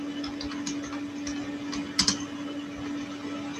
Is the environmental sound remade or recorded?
recorded